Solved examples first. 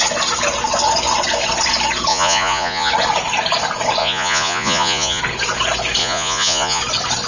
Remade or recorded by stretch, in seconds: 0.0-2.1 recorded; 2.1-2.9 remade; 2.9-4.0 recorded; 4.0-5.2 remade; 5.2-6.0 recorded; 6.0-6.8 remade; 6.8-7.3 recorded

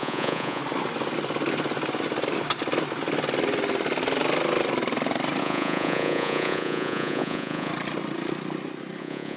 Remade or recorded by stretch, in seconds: 0.0-0.6 remade; 0.6-5.4 recorded; 5.4-7.7 remade; 7.7-9.0 recorded; 9.0-9.4 remade

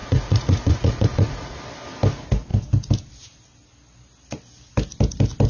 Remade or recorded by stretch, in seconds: 0.0-1.6 remade; 1.6-5.5 recorded

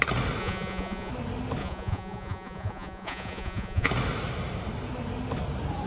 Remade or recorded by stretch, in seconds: 0.0-0.4 recorded; 0.4-1.1 remade; 1.1-1.6 recorded; 1.6-3.9 remade; 3.9-5.9 recorded

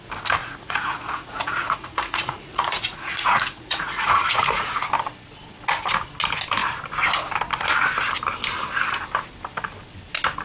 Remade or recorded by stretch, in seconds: 0.0-0.4 recorded; 0.4-4.8 remade; 4.8-10.4 recorded

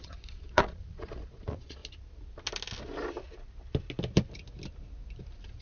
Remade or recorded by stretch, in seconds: 0.0-1.8 remade; 1.8-5.6 recorded

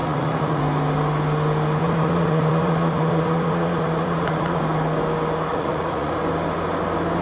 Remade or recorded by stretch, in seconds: 0.0-0.6 remade; 0.6-1.8 recorded; 1.8-4.6 remade; 4.6-5.5 recorded; 5.5-6.1 remade; 6.1-7.2 recorded

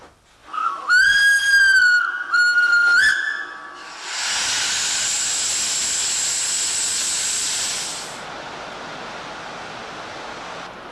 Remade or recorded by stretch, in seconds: 0.0-10.9 recorded